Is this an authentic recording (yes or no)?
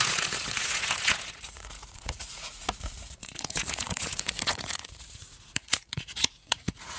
no